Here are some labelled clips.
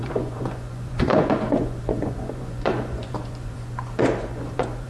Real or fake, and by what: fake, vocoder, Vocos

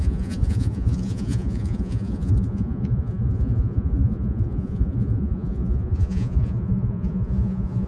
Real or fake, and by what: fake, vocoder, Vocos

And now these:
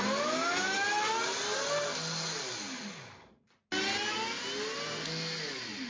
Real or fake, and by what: real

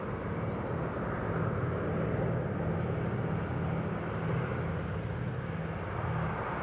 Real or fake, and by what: real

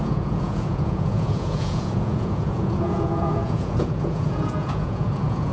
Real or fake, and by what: fake, vocoder, Vocos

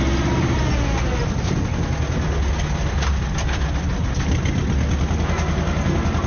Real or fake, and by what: real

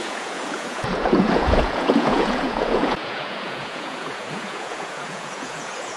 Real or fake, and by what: fake, vocoder, Vocos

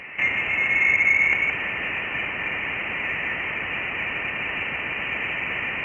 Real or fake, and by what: real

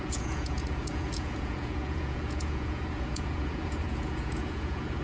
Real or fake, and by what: fake, vocoder, Vocos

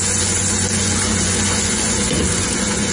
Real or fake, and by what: fake, vocoder, Vocos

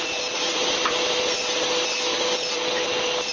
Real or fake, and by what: real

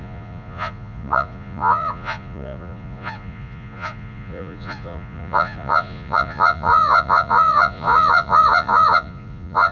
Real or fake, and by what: fake, vocoder, Vocos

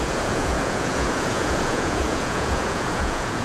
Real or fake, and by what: fake, vocoder, Vocos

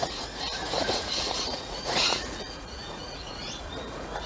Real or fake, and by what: fake, vocoder, Vocos